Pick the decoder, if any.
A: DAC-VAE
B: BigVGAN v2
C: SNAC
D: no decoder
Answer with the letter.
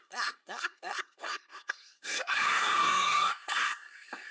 C